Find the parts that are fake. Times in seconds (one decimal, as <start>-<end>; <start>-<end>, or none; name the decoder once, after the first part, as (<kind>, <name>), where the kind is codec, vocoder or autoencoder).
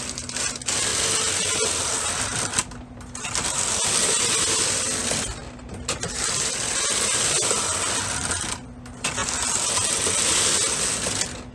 none